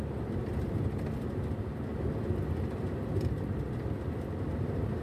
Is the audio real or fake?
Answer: real